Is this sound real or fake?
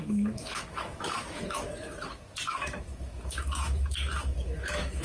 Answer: fake